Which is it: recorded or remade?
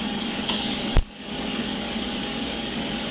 remade